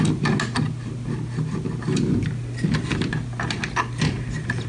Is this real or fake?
real